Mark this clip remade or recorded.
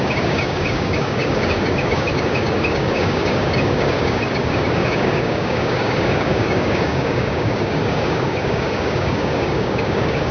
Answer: remade